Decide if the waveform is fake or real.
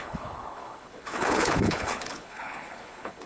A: fake